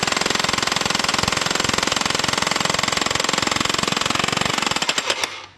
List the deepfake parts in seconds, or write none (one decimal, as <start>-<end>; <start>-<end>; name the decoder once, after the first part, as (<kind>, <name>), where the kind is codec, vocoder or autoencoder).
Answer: none